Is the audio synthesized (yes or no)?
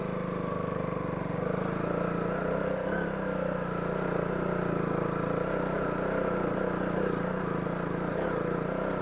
no